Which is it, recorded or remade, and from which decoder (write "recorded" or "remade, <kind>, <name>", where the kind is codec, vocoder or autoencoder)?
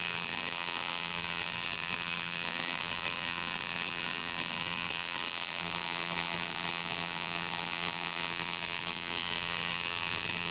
remade, vocoder, BigVGAN v2